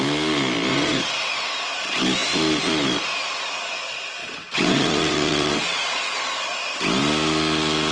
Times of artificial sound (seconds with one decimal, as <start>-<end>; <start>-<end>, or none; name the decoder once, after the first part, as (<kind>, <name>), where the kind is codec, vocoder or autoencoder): 0.7-1.3 (vocoder, WaveNeXt); 4.2-6.2